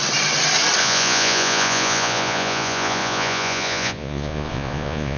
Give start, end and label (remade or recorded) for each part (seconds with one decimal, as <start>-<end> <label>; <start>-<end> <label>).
0.0-0.8 recorded; 0.8-5.2 remade